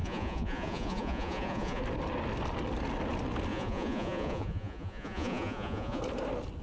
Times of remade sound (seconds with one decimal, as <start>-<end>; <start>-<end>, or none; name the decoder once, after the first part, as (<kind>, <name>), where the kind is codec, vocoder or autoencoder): 0.0-1.8 (vocoder, Vocos); 3.5-6.0